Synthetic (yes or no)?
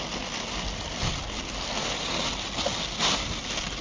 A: no